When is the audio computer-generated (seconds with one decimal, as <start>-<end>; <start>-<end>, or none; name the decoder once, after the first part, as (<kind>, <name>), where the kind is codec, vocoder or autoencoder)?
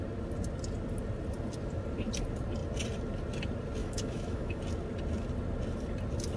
3.8-4.6 (autoencoder, DAC-VAE)